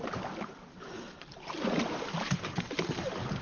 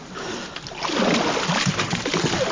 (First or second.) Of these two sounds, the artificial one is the first